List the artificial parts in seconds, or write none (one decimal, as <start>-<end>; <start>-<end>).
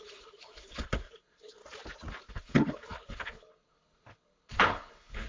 0.0-1.6; 2.3-5.3